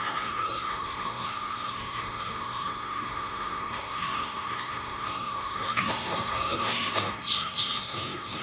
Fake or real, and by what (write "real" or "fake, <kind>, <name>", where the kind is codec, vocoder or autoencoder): fake, codec, SNAC